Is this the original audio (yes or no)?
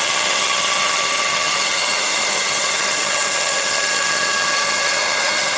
no